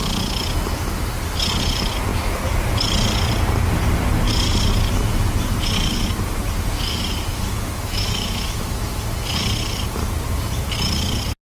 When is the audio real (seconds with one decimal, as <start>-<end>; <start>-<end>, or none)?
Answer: 0.0-7.3; 9.0-11.4